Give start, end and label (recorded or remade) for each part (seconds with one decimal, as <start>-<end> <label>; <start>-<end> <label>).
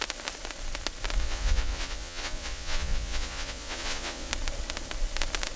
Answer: 0.0-1.2 recorded; 1.2-4.3 remade; 4.3-5.6 recorded